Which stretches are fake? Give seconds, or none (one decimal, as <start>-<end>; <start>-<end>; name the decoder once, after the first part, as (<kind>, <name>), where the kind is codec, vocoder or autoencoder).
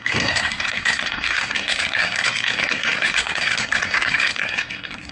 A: 0.0-5.1 (codec, SNAC)